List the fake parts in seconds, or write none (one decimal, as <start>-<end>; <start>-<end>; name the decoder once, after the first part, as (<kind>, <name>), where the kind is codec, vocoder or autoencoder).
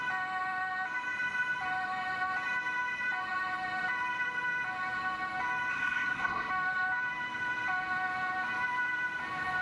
5.7-6.5 (codec, SNAC)